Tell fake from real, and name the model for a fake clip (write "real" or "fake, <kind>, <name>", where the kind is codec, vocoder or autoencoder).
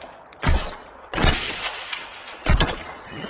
fake, vocoder, Vocos